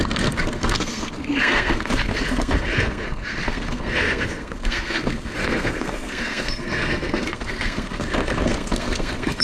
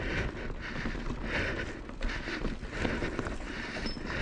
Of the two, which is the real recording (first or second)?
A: second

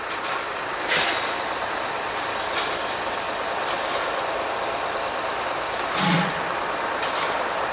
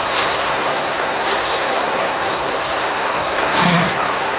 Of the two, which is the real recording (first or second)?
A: first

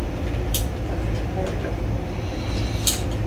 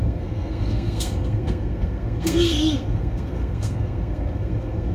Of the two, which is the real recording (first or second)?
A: first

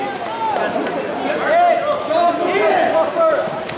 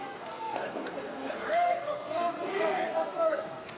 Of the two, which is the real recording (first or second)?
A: first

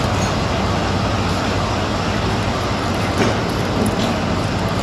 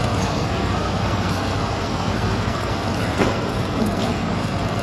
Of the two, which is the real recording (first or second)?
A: first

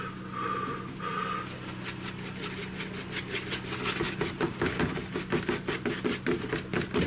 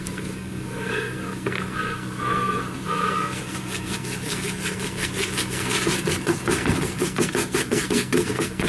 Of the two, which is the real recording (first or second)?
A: first